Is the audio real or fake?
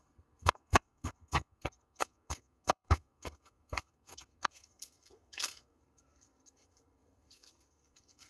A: fake